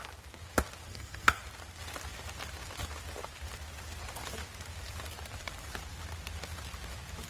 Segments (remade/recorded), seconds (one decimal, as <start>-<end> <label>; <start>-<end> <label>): 0.0-0.9 recorded; 0.9-1.4 remade; 1.4-7.3 recorded